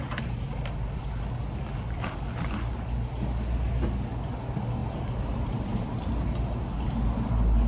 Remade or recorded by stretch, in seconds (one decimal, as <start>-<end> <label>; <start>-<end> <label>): 0.0-7.7 recorded